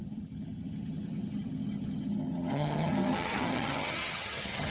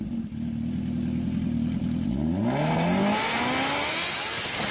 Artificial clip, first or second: first